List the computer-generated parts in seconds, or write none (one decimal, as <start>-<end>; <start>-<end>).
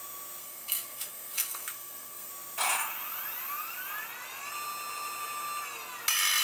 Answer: 0.4-2.3